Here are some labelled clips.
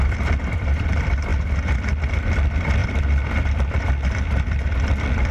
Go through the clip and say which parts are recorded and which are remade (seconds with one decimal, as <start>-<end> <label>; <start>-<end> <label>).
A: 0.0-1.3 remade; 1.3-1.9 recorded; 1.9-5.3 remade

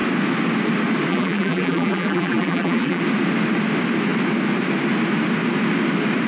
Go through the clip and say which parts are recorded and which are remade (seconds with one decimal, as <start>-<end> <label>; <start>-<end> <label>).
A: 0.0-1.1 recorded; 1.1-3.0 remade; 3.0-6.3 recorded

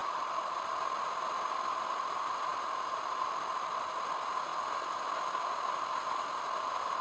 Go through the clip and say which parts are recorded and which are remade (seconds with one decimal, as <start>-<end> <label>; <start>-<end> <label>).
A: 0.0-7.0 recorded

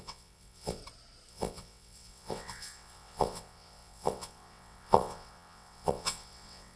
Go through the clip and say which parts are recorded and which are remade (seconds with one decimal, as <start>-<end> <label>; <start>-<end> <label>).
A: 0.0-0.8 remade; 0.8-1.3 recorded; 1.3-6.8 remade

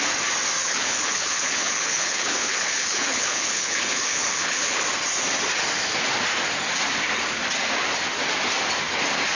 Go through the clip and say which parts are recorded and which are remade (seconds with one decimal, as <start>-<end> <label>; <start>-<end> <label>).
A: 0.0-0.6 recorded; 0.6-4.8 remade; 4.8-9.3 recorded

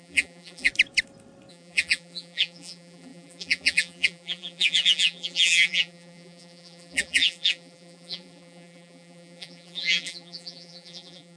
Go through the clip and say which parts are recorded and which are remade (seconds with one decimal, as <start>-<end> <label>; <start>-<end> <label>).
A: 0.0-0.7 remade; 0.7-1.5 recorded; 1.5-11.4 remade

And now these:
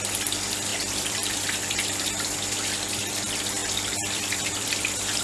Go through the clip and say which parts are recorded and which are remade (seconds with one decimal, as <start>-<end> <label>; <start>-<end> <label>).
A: 0.0-0.7 recorded; 0.7-1.9 remade; 1.9-3.6 recorded; 3.6-4.7 remade; 4.7-5.2 recorded

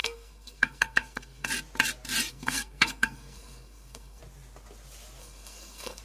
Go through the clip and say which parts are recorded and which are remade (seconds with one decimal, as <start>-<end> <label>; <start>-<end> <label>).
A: 0.0-1.5 remade; 1.5-2.3 recorded; 2.3-4.2 remade; 4.2-5.2 recorded; 5.2-6.0 remade